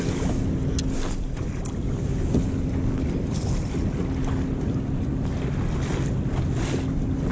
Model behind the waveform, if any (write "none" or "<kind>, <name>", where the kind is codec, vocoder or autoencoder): none